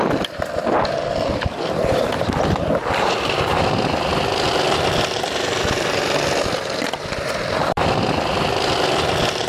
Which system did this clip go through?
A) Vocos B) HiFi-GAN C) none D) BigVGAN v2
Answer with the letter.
D